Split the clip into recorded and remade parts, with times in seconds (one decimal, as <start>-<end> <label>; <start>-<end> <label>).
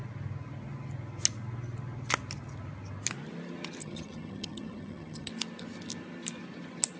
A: 0.0-3.8 recorded; 3.8-5.3 remade; 5.3-7.0 recorded